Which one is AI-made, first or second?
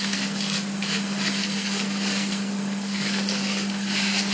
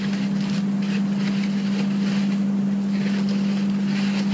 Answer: first